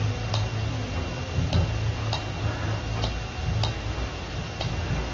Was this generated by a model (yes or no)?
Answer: no